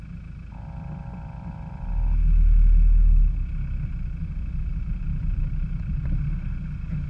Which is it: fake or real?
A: real